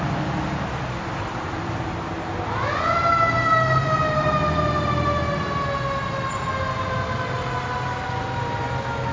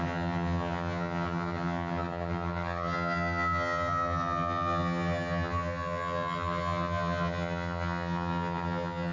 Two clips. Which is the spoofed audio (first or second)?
second